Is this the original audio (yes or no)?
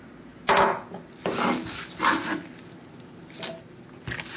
yes